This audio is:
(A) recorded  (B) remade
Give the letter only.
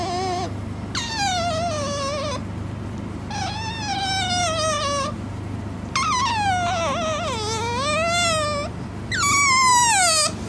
A